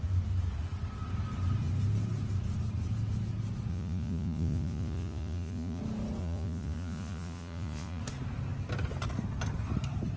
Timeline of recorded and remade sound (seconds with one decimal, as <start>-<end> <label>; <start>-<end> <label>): 0.0-3.7 recorded; 3.7-5.8 remade; 5.8-6.2 recorded; 6.2-8.0 remade; 8.0-10.2 recorded